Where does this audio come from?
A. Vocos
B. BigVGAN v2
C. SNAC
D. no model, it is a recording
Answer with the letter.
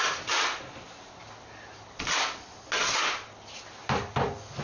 D